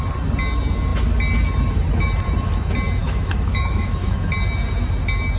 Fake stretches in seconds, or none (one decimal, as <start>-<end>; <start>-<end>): 3.0-4.3